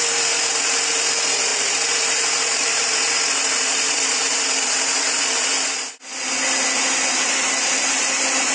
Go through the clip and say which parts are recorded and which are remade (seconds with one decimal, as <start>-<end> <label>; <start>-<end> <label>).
0.0-1.5 recorded; 1.5-5.9 remade; 5.9-8.5 recorded